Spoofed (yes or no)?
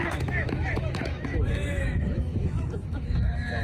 yes